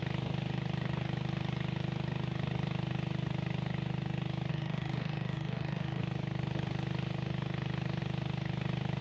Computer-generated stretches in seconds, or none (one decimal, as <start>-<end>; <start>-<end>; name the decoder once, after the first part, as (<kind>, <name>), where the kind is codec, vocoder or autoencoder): 4.5-6.0 (autoencoder, DAC-VAE)

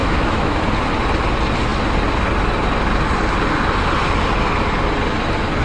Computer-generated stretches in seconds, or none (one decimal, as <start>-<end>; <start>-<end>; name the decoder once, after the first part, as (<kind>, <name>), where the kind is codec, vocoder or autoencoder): 0.0-0.6 (autoencoder, DAC-VAE)

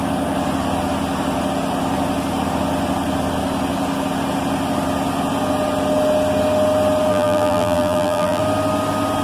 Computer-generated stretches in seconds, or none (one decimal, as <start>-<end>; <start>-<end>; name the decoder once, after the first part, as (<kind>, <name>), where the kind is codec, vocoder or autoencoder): 7.1-8.4 (vocoder, BigVGAN v2)

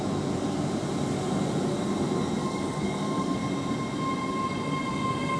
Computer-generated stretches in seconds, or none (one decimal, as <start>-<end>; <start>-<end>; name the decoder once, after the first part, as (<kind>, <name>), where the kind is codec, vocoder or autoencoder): 2.4-3.4 (codec, DAC)

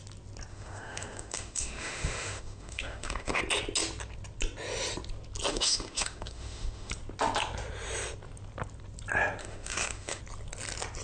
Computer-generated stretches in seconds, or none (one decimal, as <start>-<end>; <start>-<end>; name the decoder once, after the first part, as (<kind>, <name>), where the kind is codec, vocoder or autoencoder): 0.5-3.4 (autoencoder, DAC-VAE); 5.5-6.9; 9.4-10.2

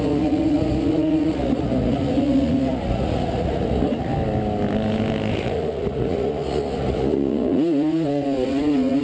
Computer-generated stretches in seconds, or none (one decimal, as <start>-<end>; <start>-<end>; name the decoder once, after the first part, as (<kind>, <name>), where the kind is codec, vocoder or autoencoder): 0.0-4.1 (vocoder, Vocos); 5.3-9.0

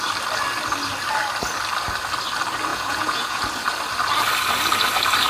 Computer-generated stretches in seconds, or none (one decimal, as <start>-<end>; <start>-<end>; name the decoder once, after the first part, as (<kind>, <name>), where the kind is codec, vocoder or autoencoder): 2.7-3.4 (vocoder, Vocos)